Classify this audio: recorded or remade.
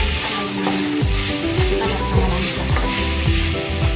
recorded